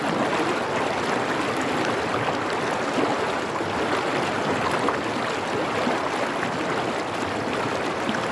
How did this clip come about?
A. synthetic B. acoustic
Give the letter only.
B